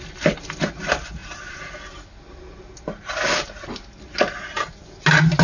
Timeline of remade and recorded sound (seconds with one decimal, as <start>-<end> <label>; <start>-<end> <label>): 0.0-5.4 recorded